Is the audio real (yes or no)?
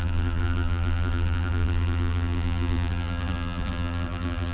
no